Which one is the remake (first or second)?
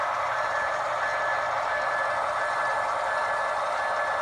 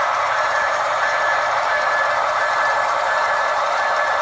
second